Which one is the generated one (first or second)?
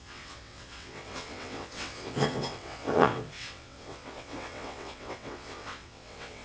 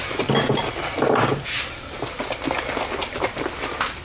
first